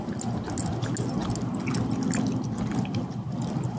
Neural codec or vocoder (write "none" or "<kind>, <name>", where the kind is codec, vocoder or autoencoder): none